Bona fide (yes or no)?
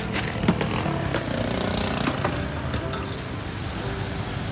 yes